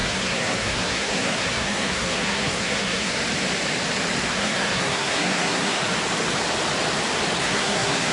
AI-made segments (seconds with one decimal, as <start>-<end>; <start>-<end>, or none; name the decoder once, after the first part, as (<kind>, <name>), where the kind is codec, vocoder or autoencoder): 0.0-3.2 (codec, SNAC); 4.3-5.8; 7.4-8.1